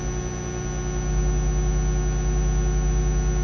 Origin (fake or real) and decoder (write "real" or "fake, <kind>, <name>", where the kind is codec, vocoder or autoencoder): real